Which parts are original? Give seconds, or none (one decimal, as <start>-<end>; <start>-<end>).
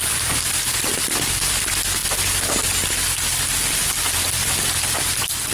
0.0-5.5